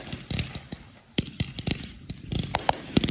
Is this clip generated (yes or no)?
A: no